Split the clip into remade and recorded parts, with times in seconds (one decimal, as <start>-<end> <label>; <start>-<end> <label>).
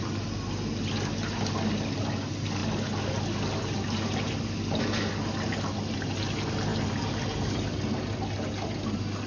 0.0-9.3 recorded